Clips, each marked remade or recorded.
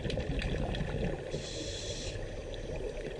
recorded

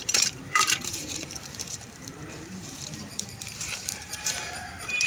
remade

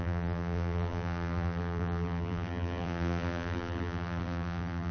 remade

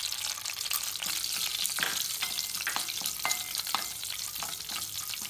recorded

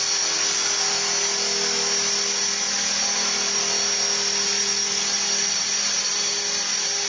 recorded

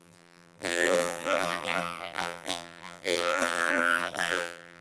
remade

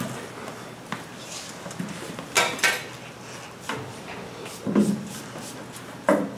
recorded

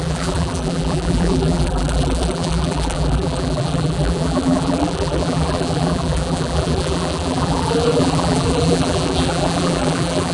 remade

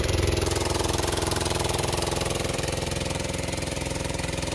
remade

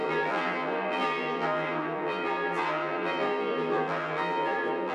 remade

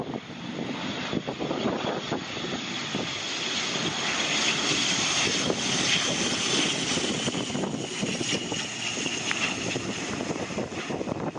recorded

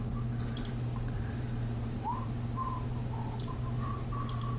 remade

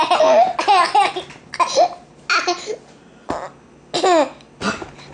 recorded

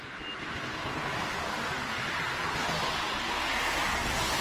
recorded